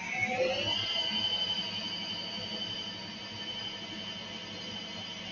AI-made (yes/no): no